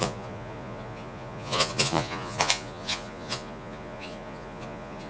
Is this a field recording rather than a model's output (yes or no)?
no